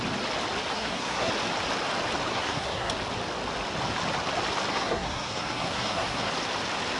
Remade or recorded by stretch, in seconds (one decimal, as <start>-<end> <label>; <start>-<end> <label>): 0.0-0.7 recorded; 0.7-1.3 remade; 1.3-2.3 recorded; 2.3-2.9 remade; 2.9-4.7 recorded; 4.7-6.3 remade; 6.3-7.0 recorded